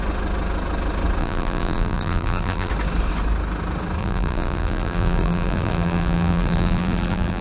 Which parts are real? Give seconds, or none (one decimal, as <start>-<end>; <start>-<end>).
0.0-1.2; 2.7-4.0